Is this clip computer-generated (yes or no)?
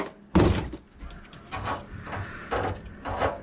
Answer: no